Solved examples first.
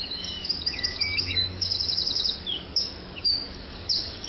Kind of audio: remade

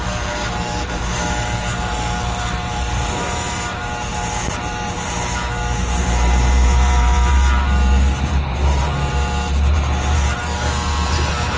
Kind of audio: remade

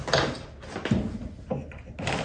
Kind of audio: recorded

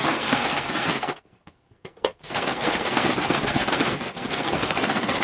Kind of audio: remade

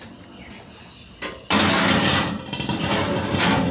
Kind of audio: recorded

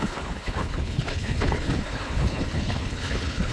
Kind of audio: remade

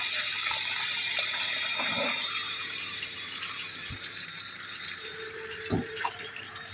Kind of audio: remade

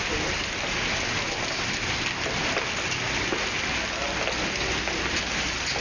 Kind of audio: recorded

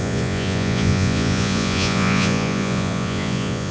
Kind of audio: remade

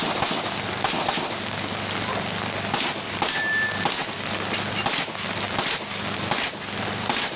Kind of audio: recorded